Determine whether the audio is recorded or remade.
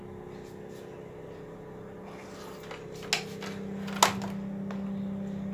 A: recorded